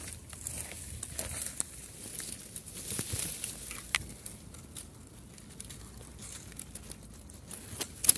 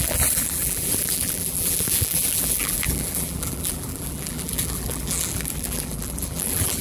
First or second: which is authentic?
first